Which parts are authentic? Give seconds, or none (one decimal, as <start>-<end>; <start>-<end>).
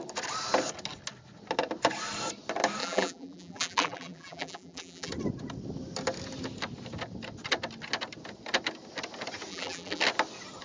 0.0-2.8; 5.1-9.5; 10.0-10.6